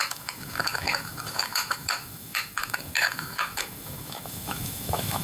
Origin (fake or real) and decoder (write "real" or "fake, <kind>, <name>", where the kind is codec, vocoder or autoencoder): fake, autoencoder, DAC-VAE